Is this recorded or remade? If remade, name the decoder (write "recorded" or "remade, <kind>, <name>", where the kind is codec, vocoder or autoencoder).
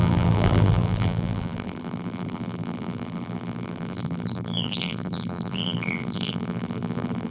remade, vocoder, BigVGAN v2